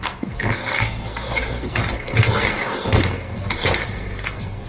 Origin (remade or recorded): remade